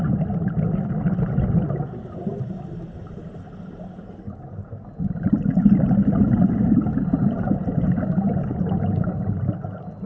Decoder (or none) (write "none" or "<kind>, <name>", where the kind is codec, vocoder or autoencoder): none